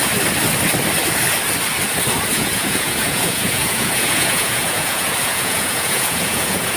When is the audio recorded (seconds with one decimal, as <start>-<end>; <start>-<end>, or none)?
0.0-2.3